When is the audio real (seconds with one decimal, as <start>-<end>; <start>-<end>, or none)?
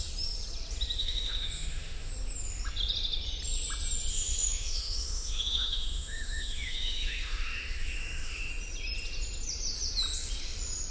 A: 0.0-1.0; 2.1-4.1; 8.5-10.9